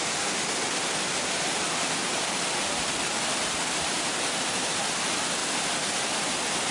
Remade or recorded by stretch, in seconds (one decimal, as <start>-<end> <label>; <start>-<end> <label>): 0.0-2.0 recorded; 2.0-4.8 remade; 4.8-6.7 recorded